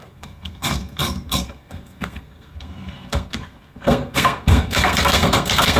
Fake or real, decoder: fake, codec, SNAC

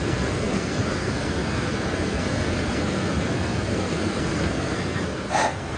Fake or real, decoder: fake, codec, SNAC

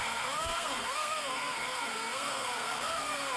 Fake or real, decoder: fake, codec, SNAC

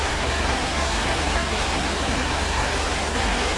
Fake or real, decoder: fake, codec, SNAC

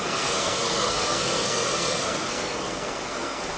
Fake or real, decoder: fake, codec, SNAC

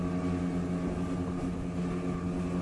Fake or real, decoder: real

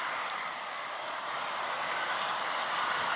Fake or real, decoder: real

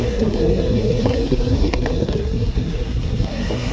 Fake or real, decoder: fake, codec, SNAC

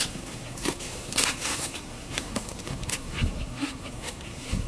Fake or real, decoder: fake, codec, SNAC